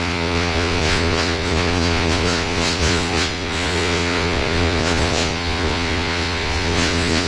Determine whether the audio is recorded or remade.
remade